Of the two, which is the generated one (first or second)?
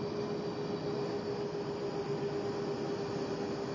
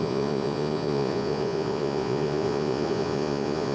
second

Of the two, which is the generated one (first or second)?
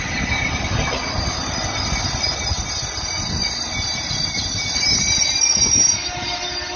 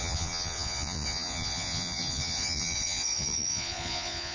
second